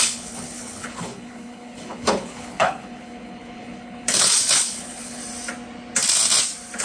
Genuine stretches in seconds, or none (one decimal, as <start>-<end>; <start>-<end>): 5.2-6.8